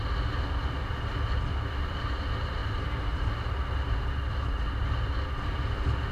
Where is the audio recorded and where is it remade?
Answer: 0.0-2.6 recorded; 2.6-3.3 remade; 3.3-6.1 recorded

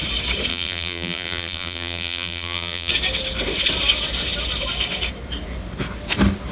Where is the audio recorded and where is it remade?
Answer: 0.0-0.5 recorded; 0.5-2.9 remade; 2.9-6.5 recorded

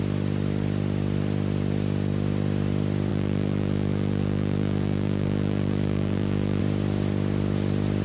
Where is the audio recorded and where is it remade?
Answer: 0.0-3.1 recorded; 3.1-6.6 remade; 6.6-8.0 recorded